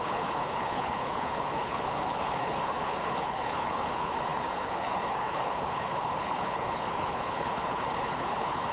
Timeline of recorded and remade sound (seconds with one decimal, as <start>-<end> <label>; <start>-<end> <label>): 0.0-8.7 remade